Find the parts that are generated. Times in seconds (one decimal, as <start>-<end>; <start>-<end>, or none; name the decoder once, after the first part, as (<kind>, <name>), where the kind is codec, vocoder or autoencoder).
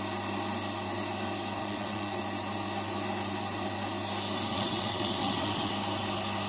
1.6-2.2 (vocoder, WaveNeXt); 4.5-5.7